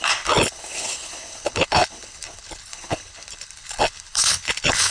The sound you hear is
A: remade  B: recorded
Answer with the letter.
A